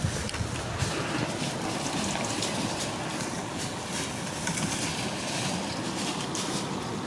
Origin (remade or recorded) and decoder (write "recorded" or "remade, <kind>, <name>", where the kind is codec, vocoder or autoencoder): recorded